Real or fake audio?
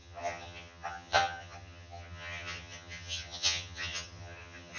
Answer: fake